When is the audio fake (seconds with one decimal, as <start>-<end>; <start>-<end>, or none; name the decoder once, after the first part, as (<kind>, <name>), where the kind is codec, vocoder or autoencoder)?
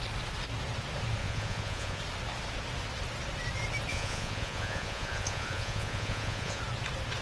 1.2-2.0 (vocoder, Vocos); 3.9-6.6